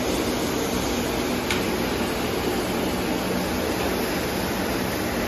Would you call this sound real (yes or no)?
yes